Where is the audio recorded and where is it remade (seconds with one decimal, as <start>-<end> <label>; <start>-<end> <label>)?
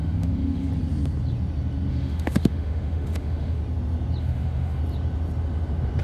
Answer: 0.0-0.7 remade; 0.7-1.9 recorded; 1.9-3.6 remade; 3.6-4.2 recorded; 4.2-4.8 remade; 4.8-6.0 recorded